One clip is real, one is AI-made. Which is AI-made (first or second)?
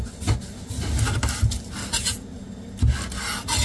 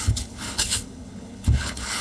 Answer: second